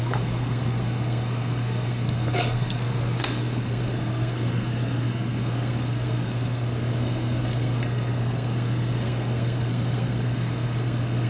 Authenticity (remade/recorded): remade